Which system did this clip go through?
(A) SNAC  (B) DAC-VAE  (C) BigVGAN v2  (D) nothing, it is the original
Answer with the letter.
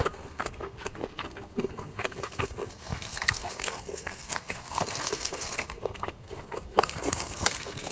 A